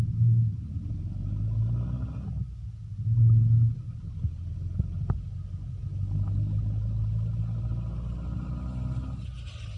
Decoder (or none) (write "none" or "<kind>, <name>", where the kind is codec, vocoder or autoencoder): none